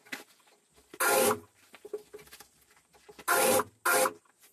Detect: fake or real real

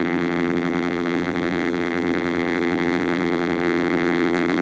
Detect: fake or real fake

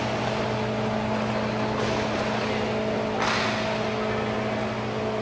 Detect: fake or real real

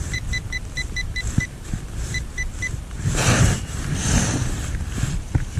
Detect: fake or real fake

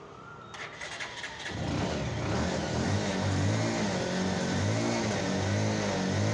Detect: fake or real real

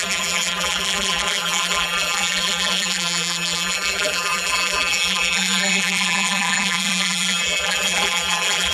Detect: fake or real fake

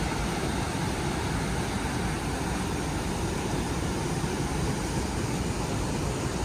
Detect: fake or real real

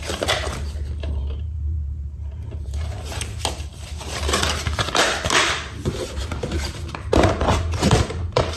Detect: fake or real fake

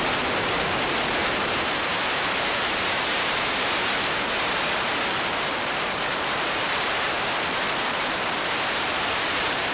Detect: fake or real fake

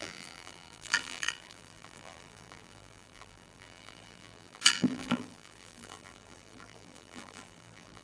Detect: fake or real fake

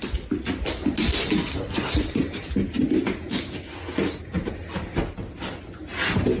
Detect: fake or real real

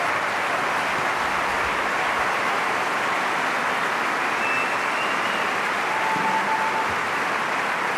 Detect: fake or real real